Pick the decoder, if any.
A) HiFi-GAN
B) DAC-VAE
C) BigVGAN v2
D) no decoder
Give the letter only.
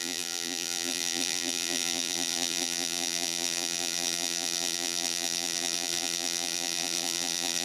C